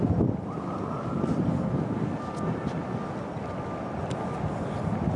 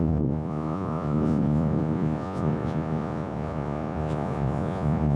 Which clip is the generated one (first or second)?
second